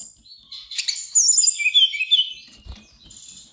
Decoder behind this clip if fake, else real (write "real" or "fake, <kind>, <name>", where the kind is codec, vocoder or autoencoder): real